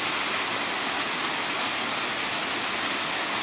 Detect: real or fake real